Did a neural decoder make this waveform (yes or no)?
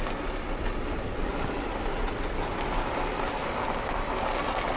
no